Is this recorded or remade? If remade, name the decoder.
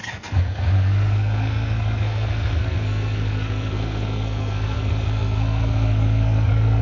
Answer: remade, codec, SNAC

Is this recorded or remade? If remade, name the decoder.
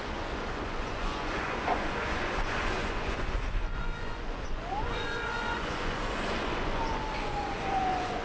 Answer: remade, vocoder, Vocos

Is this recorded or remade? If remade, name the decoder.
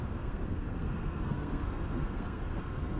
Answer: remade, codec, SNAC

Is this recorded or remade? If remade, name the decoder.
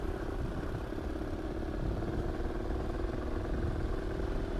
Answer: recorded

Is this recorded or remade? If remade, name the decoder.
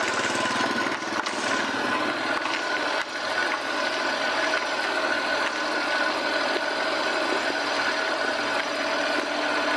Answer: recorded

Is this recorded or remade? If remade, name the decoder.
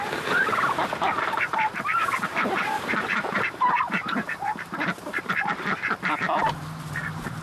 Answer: remade, vocoder, BigVGAN v2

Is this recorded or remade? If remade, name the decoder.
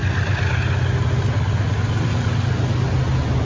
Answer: recorded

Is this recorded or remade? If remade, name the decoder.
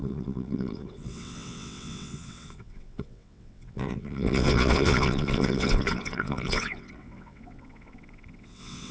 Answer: remade, vocoder, WaveNeXt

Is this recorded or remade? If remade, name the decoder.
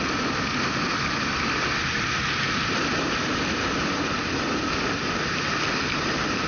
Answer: recorded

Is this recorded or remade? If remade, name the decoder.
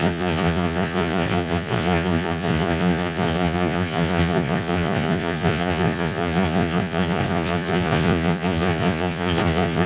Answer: remade, vocoder, Vocos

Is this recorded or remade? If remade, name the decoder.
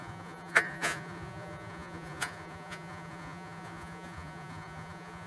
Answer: remade, vocoder, Vocos